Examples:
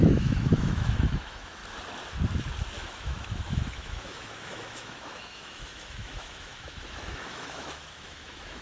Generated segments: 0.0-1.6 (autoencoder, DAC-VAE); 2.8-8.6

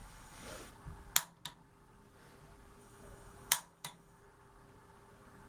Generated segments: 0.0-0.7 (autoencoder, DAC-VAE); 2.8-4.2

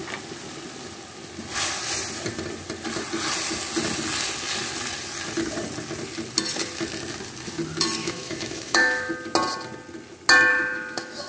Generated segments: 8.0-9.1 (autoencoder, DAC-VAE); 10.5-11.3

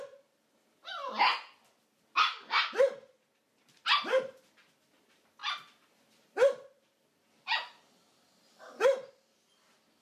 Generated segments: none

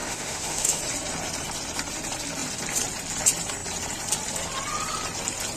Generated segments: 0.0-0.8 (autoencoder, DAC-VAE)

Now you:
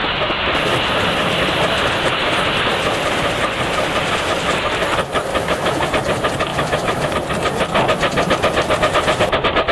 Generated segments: 5.3-5.9 (autoencoder, DAC-VAE); 6.5-7.1

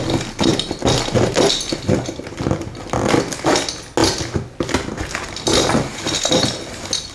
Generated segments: none